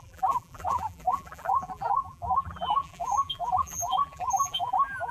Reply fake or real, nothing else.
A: fake